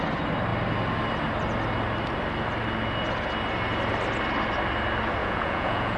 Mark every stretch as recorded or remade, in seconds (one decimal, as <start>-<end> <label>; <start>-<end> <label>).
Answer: 0.0-5.2 recorded; 5.2-6.0 remade